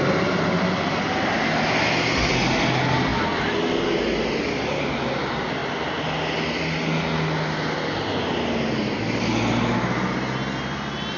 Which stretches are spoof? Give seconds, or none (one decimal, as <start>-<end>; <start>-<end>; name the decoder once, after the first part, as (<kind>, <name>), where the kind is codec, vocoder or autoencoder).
none